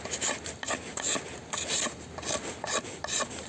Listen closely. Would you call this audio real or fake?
real